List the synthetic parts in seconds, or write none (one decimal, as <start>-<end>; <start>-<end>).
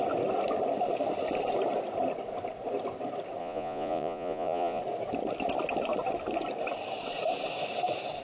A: 3.4-4.8